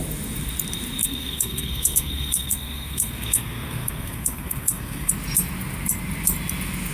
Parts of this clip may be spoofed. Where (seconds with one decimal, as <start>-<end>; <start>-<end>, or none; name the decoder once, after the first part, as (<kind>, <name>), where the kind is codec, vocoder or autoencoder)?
1.0-5.1 (codec, SNAC)